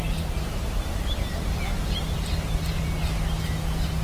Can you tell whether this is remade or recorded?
recorded